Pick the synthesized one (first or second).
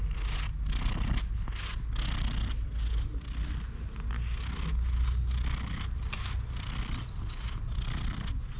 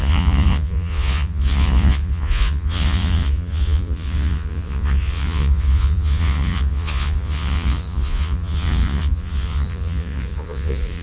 second